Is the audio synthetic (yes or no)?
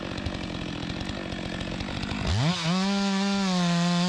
no